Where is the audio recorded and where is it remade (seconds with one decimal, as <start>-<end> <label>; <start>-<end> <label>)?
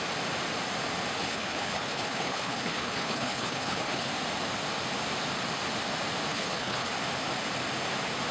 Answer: 0.0-1.2 recorded; 1.2-4.1 remade; 4.1-6.3 recorded; 6.3-6.9 remade; 6.9-8.3 recorded